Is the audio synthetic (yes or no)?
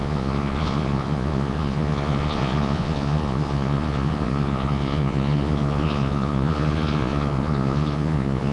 yes